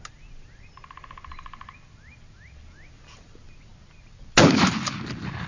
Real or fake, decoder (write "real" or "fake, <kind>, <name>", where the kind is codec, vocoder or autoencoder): real